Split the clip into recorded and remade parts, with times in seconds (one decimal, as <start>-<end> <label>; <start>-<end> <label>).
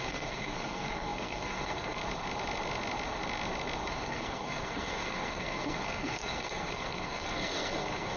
0.0-2.0 remade; 2.0-3.9 recorded; 3.9-8.2 remade